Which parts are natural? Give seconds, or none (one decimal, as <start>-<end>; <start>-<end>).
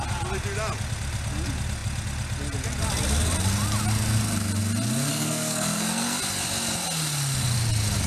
0.0-5.1; 6.2-8.1